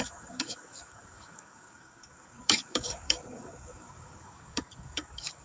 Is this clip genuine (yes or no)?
no